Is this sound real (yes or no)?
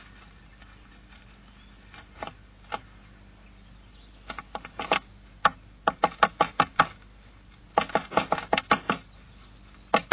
yes